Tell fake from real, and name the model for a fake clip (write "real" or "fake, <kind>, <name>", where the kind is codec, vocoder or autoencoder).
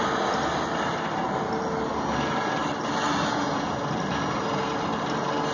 real